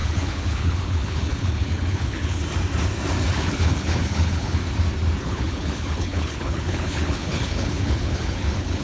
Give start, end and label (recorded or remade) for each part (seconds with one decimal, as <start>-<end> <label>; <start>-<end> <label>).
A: 0.0-2.4 remade; 2.4-3.3 recorded; 3.3-4.6 remade; 4.6-5.2 recorded; 5.2-8.8 remade